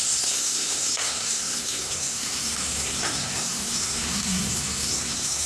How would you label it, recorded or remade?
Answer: remade